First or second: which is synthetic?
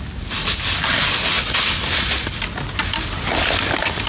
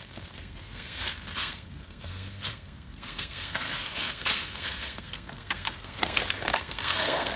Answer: second